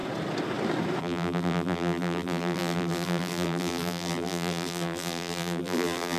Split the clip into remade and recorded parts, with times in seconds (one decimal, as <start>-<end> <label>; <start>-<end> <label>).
0.0-1.0 recorded; 1.0-6.2 remade